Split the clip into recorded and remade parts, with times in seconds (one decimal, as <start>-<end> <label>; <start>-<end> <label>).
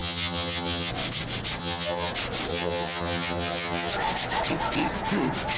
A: 0.0-0.9 remade; 0.9-1.6 recorded; 1.6-2.1 remade; 2.1-2.5 recorded; 2.5-3.9 remade; 3.9-5.6 recorded